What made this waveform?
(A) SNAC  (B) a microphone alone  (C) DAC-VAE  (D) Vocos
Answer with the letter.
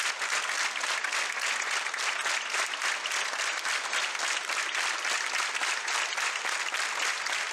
B